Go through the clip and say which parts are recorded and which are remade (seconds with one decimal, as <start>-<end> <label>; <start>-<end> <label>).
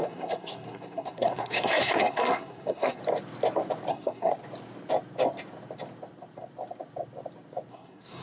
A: 0.0-3.0 remade; 3.0-3.9 recorded; 3.9-4.3 remade; 4.3-7.7 recorded; 7.7-8.2 remade